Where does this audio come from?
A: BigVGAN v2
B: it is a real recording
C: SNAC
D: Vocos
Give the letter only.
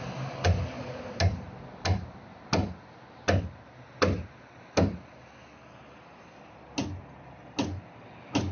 B